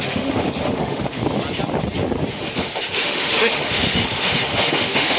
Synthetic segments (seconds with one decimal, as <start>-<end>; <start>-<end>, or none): 0.0-1.2; 2.3-5.2